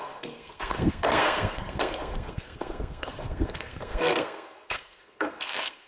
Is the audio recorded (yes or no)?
no